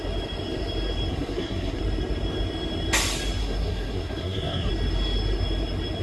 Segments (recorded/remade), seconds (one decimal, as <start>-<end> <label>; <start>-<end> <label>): 0.0-1.1 recorded; 1.1-1.8 remade; 1.8-3.4 recorded; 3.4-4.7 remade; 4.7-6.0 recorded